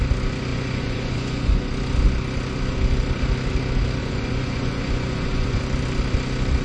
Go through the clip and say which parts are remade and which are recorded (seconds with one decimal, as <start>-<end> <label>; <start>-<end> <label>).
0.0-0.5 recorded; 0.5-1.7 remade; 1.7-4.0 recorded; 4.0-5.6 remade; 5.6-6.6 recorded